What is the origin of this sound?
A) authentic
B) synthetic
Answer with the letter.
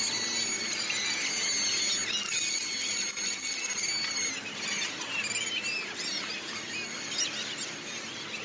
A